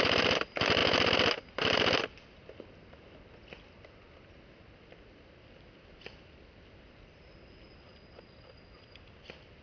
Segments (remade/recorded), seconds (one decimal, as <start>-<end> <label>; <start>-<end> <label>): 0.0-0.8 remade; 0.8-5.4 recorded; 5.4-9.6 remade